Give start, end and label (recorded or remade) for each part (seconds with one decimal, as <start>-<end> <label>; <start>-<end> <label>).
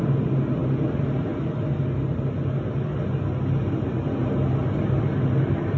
0.0-5.8 recorded